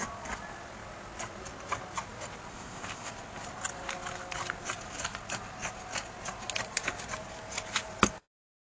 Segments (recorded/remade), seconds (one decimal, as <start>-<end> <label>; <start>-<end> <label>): 0.0-2.5 recorded; 2.5-3.1 remade; 3.1-8.7 recorded